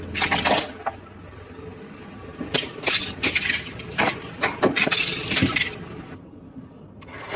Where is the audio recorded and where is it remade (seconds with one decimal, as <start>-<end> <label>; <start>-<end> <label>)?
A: 0.0-2.3 recorded; 2.3-6.7 remade; 6.7-7.4 recorded